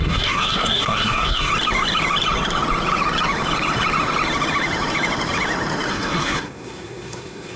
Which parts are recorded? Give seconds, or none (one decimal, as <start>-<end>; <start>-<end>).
1.5-5.9